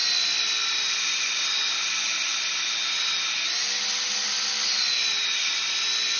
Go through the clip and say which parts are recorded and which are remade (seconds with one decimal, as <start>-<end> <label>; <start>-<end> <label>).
0.0-1.7 remade; 1.7-6.2 recorded